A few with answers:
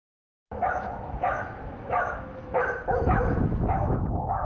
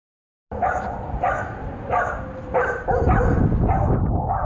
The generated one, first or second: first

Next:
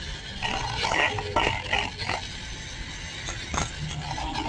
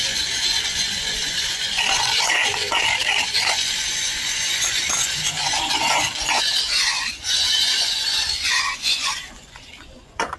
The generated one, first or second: second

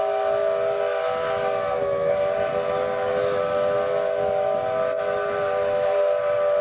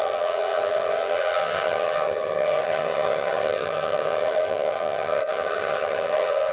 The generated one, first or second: second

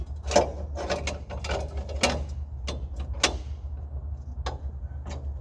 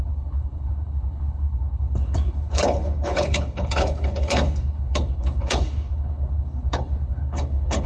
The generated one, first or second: second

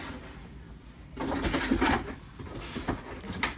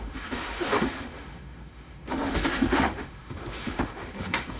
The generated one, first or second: second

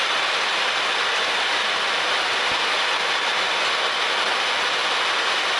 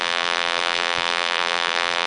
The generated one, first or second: second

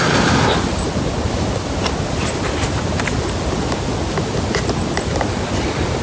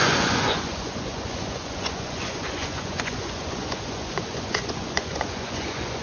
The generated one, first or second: second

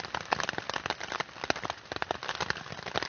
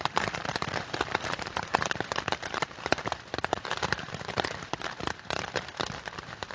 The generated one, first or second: second